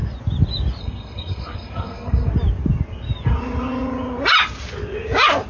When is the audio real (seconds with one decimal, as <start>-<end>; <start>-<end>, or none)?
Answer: 0.0-0.8; 2.3-5.5